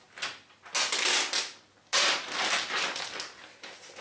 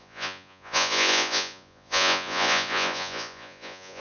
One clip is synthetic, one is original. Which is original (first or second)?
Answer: first